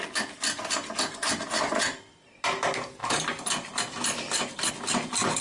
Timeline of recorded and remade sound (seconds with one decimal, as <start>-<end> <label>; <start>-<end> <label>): 0.0-5.4 recorded